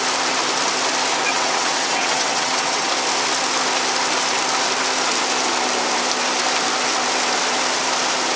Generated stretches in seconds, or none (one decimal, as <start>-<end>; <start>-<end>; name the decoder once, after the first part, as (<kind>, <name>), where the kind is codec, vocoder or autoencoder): 1.3-2.9 (vocoder, WaveNeXt)